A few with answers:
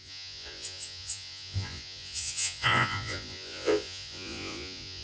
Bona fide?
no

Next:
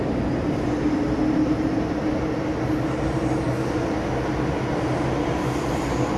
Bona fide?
yes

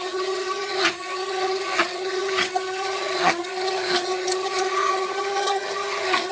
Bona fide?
no